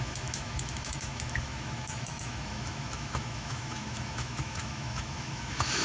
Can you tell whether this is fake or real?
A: fake